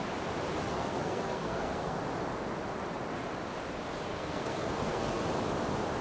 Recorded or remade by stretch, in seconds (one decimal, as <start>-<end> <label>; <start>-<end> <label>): 0.0-0.6 recorded; 0.6-2.0 remade; 2.0-4.1 recorded; 4.1-5.2 remade; 5.2-6.0 recorded